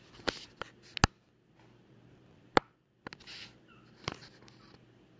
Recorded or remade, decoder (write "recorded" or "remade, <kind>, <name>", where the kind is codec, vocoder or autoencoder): recorded